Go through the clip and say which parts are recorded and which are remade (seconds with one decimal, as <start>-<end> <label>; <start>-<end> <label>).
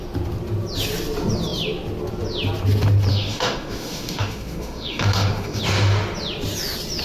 0.0-3.1 recorded; 3.1-5.6 remade; 5.6-7.0 recorded